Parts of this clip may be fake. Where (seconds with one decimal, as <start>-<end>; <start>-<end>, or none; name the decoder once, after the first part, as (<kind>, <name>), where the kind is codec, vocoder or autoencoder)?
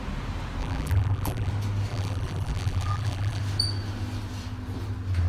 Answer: 0.6-1.5 (vocoder, BigVGAN v2); 1.9-3.4